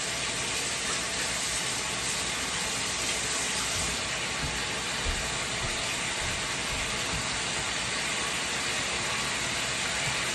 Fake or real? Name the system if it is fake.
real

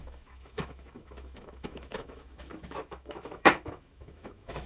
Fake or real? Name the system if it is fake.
fake, autoencoder, DAC-VAE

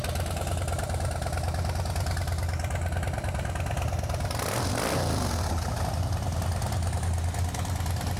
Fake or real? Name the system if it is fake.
real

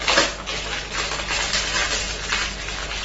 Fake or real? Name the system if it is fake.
real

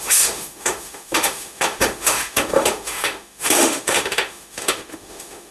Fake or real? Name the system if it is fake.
fake, autoencoder, DAC-VAE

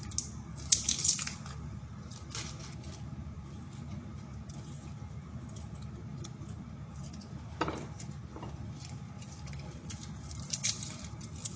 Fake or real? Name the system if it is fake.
real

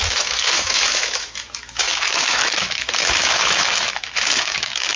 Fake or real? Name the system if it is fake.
fake, autoencoder, DAC-VAE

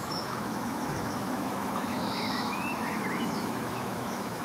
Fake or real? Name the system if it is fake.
fake, autoencoder, DAC-VAE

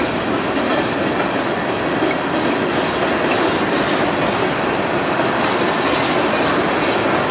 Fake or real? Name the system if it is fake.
real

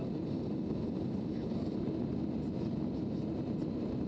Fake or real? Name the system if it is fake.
real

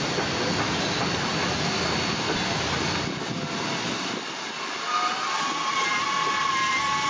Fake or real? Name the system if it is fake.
real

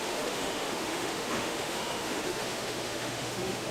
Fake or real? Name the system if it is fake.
fake, autoencoder, DAC-VAE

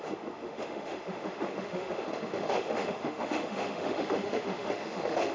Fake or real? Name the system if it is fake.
fake, autoencoder, DAC-VAE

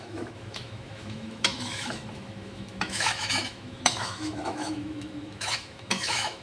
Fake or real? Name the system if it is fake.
fake, autoencoder, DAC-VAE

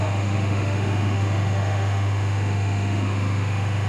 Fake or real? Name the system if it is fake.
fake, autoencoder, DAC-VAE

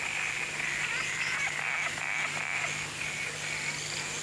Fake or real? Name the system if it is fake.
real